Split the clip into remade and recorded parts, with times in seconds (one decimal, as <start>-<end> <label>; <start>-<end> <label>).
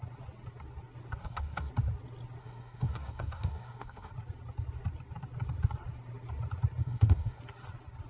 0.0-1.2 recorded; 1.2-1.7 remade; 1.7-2.4 recorded; 2.4-4.1 remade; 4.1-6.8 recorded; 6.8-7.4 remade; 7.4-8.1 recorded